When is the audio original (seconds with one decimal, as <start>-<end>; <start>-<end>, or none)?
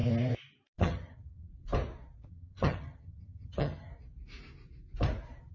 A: 0.0-0.8; 1.5-2.3; 3.9-5.5